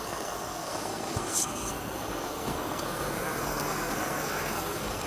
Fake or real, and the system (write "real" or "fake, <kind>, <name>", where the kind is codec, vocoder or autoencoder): fake, codec, SNAC